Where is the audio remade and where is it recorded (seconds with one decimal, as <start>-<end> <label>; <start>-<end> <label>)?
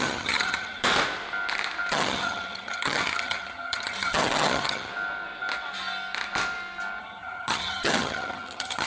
0.0-0.8 remade; 0.8-1.9 recorded; 1.9-4.9 remade; 4.9-7.0 recorded; 7.0-8.9 remade